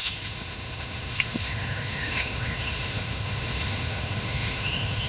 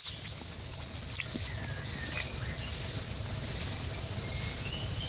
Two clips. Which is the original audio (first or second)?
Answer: second